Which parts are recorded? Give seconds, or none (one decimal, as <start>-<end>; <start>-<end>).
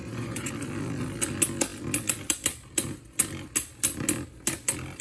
0.5-5.0